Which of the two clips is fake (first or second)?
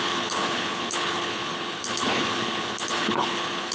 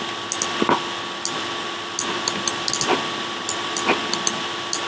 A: first